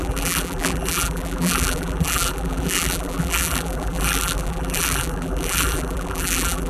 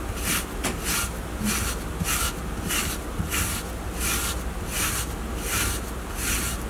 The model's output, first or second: first